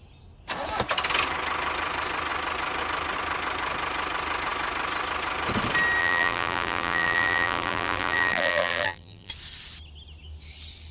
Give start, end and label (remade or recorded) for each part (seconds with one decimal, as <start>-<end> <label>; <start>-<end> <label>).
0.0-6.0 recorded; 6.0-9.3 remade; 9.3-10.9 recorded